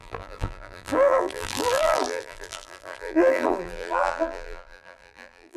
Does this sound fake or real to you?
fake